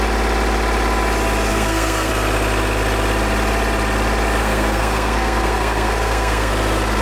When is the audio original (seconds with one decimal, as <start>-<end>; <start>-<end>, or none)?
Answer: 0.0-1.5; 2.1-4.4; 6.5-7.0